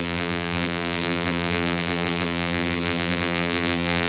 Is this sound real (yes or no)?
no